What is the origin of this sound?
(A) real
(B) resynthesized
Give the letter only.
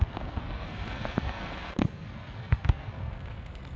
B